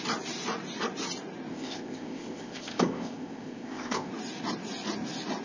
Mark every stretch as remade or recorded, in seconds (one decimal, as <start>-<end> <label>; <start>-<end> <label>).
0.0-1.5 recorded; 1.5-4.1 remade; 4.1-5.4 recorded